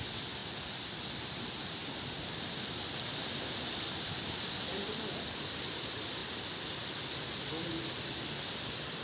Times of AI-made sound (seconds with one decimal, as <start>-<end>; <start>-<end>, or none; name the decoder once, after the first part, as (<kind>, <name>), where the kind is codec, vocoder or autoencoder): 0.0-0.4 (vocoder, BigVGAN v2); 1.0-9.0